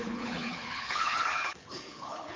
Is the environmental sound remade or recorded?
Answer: remade